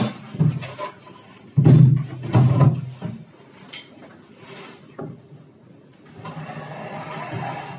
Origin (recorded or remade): recorded